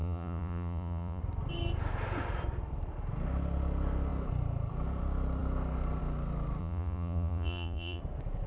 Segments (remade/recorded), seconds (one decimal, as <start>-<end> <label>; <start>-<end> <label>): 0.0-1.2 remade; 1.2-6.6 recorded; 6.6-8.0 remade; 8.0-8.5 recorded